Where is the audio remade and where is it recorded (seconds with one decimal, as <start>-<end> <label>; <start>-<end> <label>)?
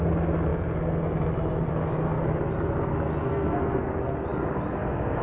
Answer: 0.0-3.2 recorded; 3.2-3.9 remade; 3.9-5.2 recorded